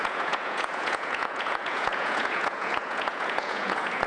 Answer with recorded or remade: remade